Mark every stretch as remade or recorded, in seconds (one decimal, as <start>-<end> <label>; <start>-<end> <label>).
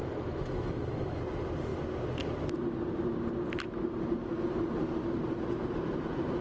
0.0-1.2 remade; 1.2-6.4 recorded